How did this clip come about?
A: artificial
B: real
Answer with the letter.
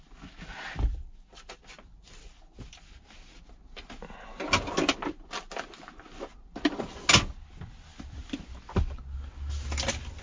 B